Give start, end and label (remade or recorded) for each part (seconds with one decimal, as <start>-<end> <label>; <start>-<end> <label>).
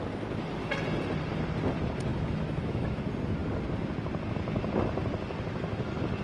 0.0-2.1 recorded; 2.1-3.0 remade; 3.0-6.2 recorded